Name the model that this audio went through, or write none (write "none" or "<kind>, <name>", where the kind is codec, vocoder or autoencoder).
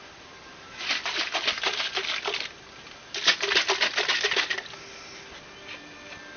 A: none